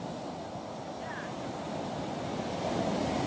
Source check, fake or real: real